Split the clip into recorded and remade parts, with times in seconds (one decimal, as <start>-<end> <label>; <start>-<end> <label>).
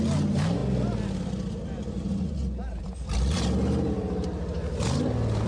0.0-5.5 recorded